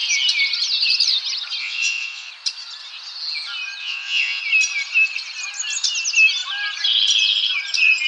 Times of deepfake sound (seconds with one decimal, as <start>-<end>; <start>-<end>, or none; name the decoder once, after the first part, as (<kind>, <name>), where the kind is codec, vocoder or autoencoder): 1.6-2.3 (vocoder, WaveNeXt); 3.8-4.4